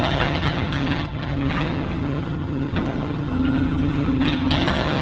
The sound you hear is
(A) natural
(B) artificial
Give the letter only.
B